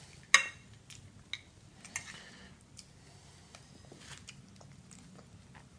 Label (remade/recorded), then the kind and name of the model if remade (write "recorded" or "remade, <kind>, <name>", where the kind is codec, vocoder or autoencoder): recorded